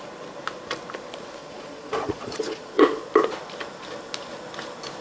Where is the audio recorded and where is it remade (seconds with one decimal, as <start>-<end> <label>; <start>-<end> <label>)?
0.0-1.4 recorded; 1.4-3.1 remade; 3.1-5.0 recorded